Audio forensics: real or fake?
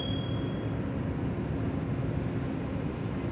real